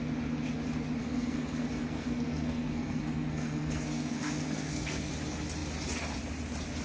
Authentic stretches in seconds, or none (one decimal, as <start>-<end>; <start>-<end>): 0.0-1.0; 5.1-6.8